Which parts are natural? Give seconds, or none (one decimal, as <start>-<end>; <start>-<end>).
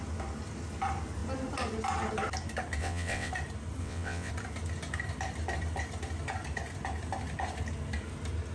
0.0-2.8; 3.3-3.8; 4.3-8.5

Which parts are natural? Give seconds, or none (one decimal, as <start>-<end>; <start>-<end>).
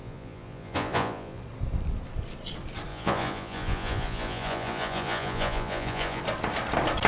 1.4-2.9; 6.2-7.1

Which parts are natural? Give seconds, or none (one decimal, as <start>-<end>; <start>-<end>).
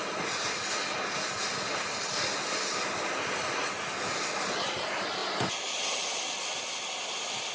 0.0-7.5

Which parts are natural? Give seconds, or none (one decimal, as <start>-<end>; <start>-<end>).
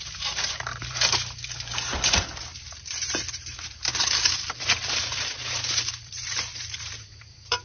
none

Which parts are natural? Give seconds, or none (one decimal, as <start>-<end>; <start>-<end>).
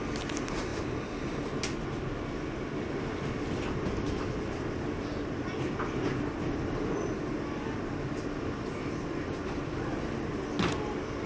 0.0-11.3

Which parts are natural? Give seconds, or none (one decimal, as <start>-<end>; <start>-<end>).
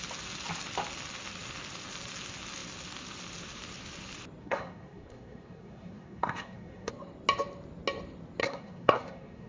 0.0-4.4; 6.9-8.4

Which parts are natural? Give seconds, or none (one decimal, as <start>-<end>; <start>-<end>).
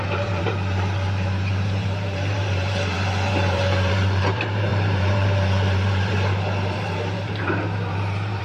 none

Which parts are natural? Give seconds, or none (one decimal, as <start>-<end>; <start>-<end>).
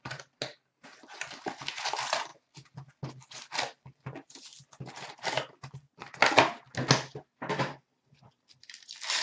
0.0-9.2